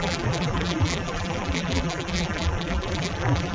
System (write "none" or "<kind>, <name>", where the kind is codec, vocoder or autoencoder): vocoder, BigVGAN v2